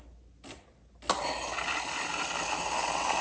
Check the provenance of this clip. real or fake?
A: real